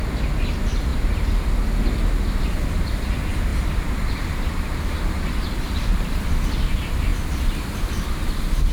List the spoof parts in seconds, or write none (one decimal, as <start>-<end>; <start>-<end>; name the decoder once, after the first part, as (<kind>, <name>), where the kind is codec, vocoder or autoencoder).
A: 3.5-6.5 (vocoder, BigVGAN v2)